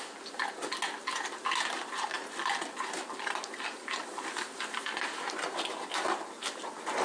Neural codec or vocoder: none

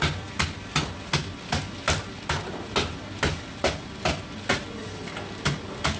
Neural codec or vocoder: none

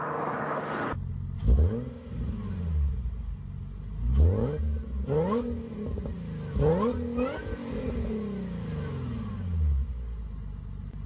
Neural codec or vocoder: none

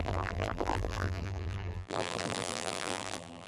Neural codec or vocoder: vocoder, BigVGAN v2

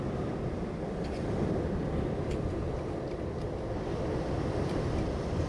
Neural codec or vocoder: none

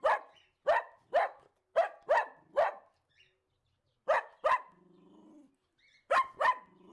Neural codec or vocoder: none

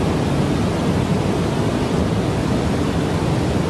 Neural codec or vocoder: none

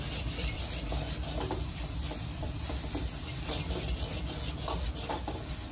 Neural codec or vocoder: vocoder, BigVGAN v2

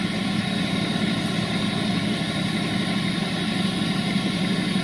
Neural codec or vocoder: none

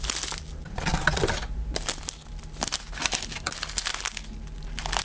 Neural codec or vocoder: none